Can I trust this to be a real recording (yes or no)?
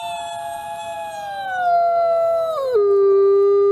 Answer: yes